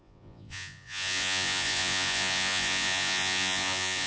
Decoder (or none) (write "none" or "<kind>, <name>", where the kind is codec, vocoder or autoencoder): vocoder, Vocos